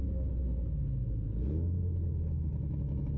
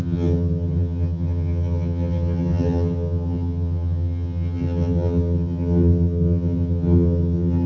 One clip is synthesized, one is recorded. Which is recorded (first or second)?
first